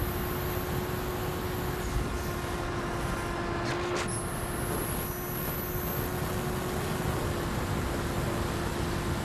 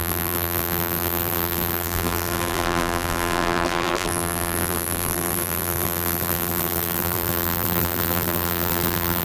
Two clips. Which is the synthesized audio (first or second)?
second